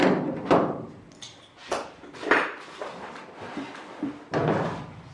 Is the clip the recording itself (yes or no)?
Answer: yes